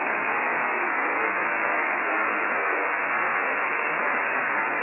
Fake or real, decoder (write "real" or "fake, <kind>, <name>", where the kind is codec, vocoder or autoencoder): fake, codec, SNAC